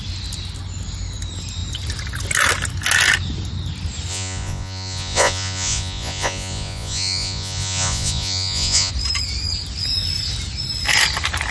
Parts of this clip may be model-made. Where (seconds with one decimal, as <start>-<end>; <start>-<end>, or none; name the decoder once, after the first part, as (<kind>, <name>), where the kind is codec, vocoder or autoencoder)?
4.1-8.9 (vocoder, Vocos)